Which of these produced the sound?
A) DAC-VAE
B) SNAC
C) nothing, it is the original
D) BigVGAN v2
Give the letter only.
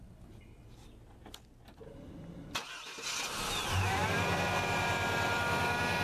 C